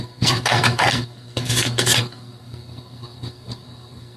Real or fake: fake